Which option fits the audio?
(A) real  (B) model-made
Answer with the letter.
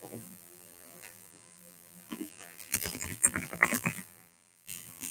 B